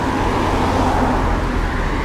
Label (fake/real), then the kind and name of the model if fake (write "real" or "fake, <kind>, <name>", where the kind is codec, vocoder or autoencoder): real